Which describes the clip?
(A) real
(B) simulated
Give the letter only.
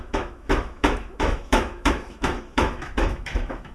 B